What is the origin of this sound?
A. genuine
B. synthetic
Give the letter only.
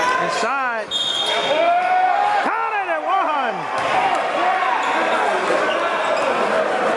A